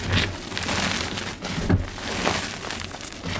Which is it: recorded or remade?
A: recorded